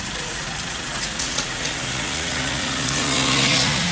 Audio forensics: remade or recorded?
remade